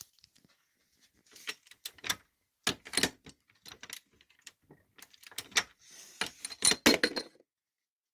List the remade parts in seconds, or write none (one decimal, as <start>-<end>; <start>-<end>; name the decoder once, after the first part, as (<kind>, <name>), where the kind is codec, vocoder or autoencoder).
none